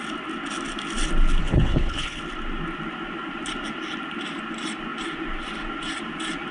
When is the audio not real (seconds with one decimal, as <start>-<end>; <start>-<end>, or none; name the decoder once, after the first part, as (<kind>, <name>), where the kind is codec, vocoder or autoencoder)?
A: 1.4-2.2 (codec, HILCodec)

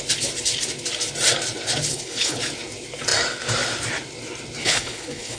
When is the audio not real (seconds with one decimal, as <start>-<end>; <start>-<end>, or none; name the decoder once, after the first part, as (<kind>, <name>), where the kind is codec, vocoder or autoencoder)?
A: 1.9-2.4 (codec, HILCodec); 4.6-5.4

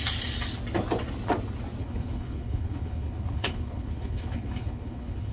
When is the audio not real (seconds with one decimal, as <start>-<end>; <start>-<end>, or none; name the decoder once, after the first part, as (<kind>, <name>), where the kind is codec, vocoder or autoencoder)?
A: 1.8-5.3 (codec, HILCodec)